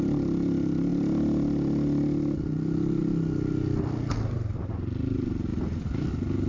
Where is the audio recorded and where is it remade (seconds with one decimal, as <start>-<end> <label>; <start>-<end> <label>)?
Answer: 0.0-5.5 recorded; 5.5-6.1 remade; 6.1-6.5 recorded